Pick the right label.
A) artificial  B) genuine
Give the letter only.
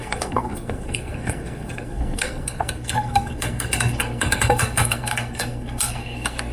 A